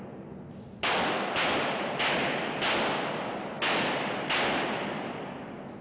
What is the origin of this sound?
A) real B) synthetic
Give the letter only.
A